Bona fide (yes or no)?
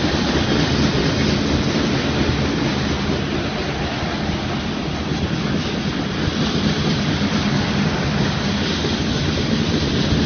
yes